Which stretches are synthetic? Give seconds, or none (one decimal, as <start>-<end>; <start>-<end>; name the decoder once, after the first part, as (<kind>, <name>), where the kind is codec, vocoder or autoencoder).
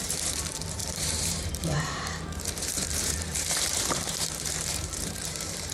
0.0-5.7 (vocoder, BigVGAN v2)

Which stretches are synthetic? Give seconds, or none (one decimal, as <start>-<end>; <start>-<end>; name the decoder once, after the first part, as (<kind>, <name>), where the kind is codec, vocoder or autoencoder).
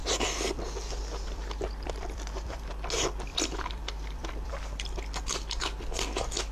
0.0-2.7 (vocoder, BigVGAN v2); 3.3-4.5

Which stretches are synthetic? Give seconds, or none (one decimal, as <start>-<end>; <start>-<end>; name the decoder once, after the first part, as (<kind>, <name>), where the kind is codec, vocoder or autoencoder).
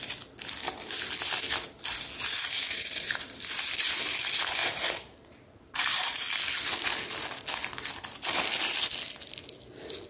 2.7-4.0 (vocoder, BigVGAN v2); 4.6-6.1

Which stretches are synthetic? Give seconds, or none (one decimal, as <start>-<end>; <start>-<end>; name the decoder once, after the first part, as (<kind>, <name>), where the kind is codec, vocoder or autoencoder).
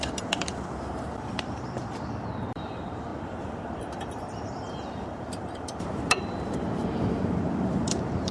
0.0-1.8 (vocoder, BigVGAN v2); 2.4-8.3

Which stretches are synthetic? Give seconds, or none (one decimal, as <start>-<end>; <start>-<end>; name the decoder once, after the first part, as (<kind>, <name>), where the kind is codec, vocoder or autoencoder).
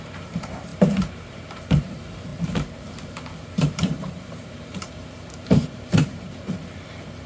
0.0-7.3 (vocoder, BigVGAN v2)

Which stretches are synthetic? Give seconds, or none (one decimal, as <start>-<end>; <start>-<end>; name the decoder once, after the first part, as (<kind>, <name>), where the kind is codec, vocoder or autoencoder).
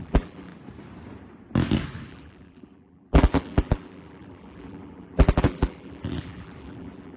0.0-0.5 (vocoder, BigVGAN v2); 2.1-7.2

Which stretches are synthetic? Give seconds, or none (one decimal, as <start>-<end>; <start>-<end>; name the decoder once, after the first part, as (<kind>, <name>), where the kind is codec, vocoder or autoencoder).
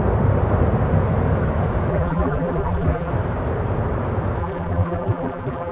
1.9-3.1 (vocoder, BigVGAN v2); 4.4-5.7